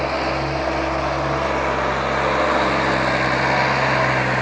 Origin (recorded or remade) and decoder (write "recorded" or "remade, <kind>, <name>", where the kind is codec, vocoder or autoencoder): recorded